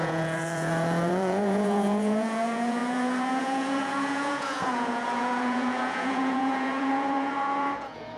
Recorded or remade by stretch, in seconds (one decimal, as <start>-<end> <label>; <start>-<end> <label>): 0.0-8.2 remade